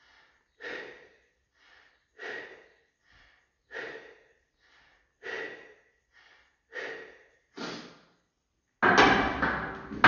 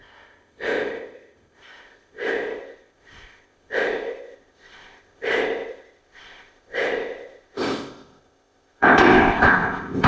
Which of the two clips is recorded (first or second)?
first